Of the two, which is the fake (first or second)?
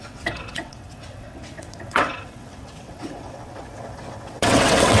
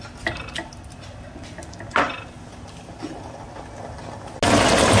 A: first